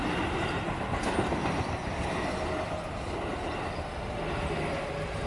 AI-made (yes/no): no